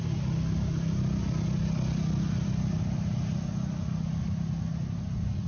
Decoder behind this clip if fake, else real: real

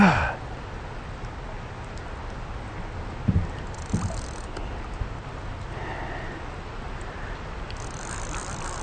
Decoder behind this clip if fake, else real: real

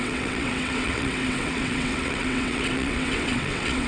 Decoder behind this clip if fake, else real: fake, vocoder, WaveNeXt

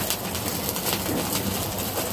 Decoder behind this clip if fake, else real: real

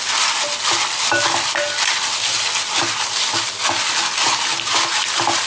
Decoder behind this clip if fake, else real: real